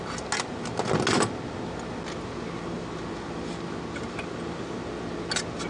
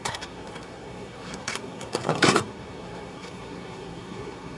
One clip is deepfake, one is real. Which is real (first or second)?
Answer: first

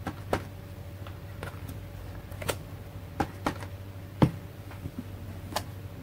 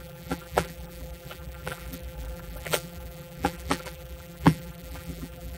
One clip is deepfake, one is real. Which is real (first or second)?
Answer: first